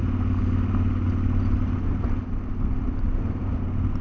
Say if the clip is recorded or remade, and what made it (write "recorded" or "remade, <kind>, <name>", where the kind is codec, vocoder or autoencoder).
recorded